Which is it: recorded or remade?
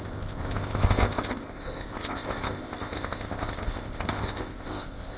remade